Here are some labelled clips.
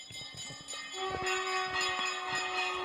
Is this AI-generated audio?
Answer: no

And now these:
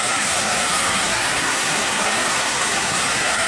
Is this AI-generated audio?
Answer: yes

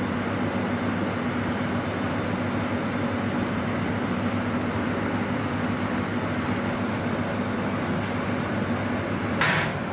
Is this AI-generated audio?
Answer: no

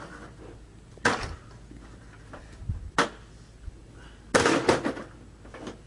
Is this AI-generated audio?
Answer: no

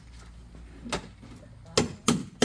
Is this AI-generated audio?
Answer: no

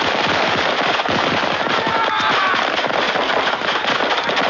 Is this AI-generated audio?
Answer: no